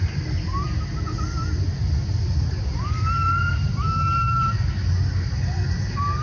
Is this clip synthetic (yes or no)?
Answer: no